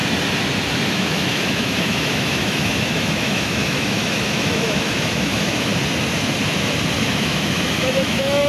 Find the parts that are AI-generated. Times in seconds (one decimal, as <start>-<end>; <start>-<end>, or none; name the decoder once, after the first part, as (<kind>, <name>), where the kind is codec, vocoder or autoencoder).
0.9-5.7 (autoencoder, DAC-VAE); 7.1-8.5